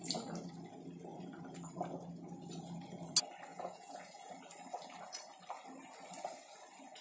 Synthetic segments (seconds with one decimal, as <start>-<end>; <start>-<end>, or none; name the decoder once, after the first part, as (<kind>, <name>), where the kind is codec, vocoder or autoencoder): 3.5-4.3 (vocoder, Vocos)